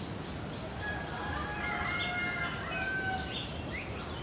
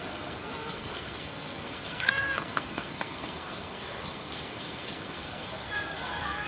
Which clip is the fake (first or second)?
second